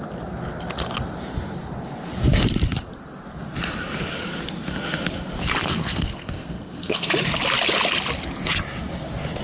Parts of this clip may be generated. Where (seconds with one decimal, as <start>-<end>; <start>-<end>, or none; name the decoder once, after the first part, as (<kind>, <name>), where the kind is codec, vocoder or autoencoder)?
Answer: 5.6-7.1 (codec, SNAC)